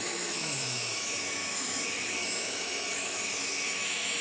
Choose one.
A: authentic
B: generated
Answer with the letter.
B